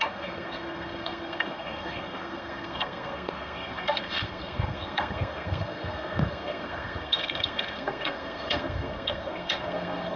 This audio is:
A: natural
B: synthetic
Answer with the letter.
B